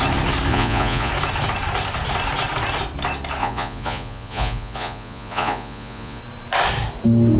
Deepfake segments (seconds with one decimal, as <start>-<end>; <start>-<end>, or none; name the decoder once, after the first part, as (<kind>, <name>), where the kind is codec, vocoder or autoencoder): 0.5-1.1 (vocoder, Vocos); 3.4-6.2